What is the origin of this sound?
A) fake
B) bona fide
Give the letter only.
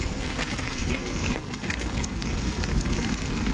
A